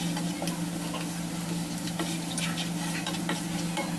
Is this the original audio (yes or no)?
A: yes